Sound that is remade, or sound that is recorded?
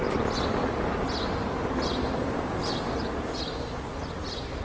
recorded